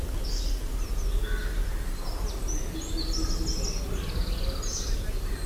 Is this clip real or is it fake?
real